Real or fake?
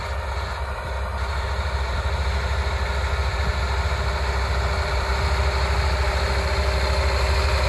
real